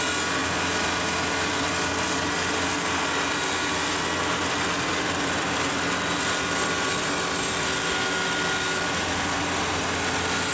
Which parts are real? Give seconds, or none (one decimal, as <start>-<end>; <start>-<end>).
0.0-10.5